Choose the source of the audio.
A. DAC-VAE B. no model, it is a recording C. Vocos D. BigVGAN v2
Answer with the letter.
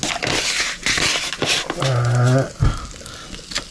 B